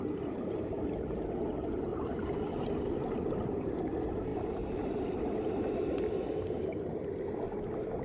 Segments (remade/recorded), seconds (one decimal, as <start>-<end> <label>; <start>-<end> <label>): 0.0-1.9 recorded; 1.9-2.6 remade; 2.6-4.3 recorded; 4.3-5.1 remade; 5.1-8.0 recorded